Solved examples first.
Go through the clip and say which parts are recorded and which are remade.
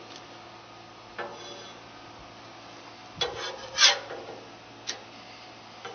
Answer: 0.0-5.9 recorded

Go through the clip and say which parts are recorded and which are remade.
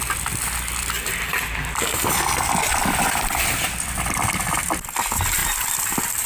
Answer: 0.0-6.3 remade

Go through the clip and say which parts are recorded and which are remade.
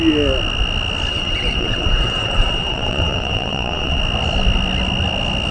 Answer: 0.0-1.1 recorded; 1.1-4.0 remade; 4.0-5.5 recorded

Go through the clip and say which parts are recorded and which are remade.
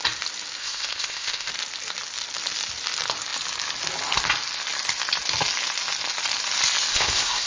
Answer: 0.0-0.6 recorded; 0.6-1.5 remade; 1.5-6.9 recorded; 6.9-7.5 remade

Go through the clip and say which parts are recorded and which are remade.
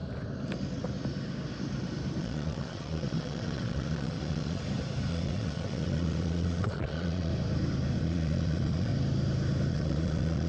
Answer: 0.0-2.2 recorded; 2.2-4.6 remade; 4.6-5.1 recorded; 5.1-7.3 remade; 7.3-8.0 recorded; 8.0-8.9 remade; 8.9-9.7 recorded; 9.7-10.5 remade